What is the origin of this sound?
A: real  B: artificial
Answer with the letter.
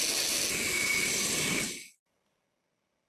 A